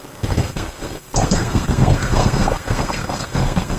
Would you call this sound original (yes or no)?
no